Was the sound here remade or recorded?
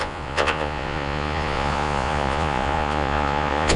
remade